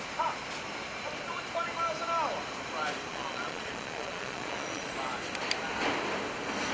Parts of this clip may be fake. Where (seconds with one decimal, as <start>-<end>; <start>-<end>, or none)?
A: 3.1-4.9

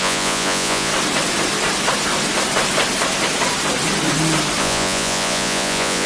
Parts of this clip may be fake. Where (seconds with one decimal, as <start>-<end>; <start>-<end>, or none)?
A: 0.0-0.9; 4.6-6.1

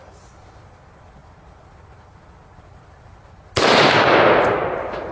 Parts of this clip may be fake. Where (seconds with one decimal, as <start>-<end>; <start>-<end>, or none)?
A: none

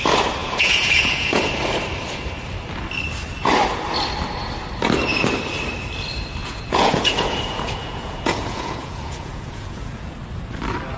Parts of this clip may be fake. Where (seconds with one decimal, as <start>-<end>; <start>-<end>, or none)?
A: 0.4-1.5; 6.4-10.1